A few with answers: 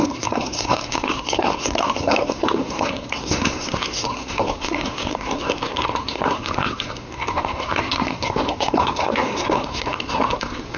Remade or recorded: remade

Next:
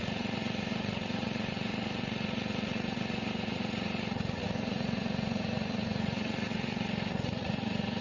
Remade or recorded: remade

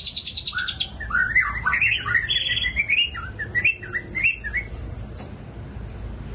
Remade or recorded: recorded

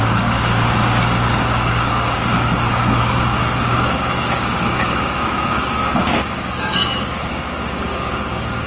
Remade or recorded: remade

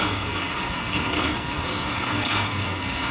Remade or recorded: remade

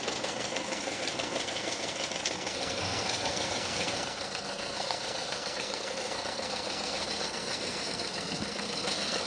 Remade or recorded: remade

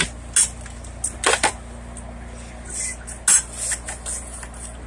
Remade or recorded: recorded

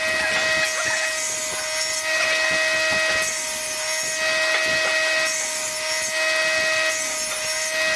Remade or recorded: recorded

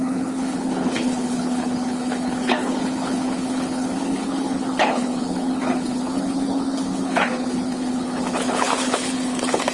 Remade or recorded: remade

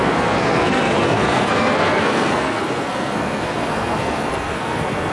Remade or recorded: remade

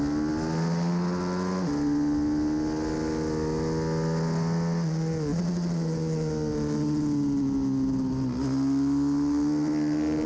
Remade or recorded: recorded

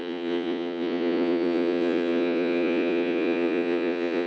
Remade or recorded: remade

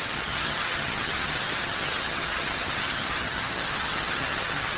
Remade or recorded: remade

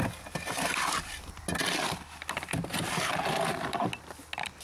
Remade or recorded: recorded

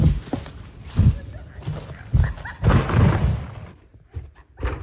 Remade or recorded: recorded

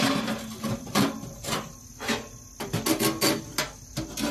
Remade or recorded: recorded